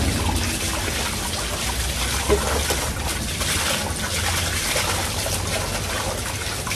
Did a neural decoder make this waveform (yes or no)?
no